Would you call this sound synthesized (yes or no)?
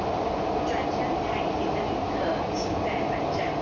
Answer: no